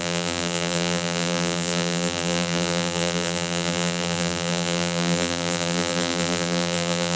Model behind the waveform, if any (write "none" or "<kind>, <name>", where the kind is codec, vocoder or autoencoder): vocoder, BigVGAN v2